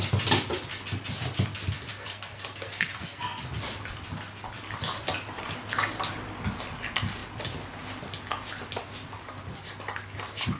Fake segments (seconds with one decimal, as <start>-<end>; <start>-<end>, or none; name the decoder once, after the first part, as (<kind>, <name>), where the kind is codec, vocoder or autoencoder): 1.9-3.4 (codec, SNAC)